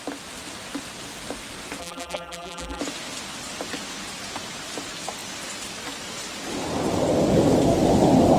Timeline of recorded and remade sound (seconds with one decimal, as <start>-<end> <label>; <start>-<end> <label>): 0.0-1.8 recorded; 1.8-2.8 remade; 2.8-8.4 recorded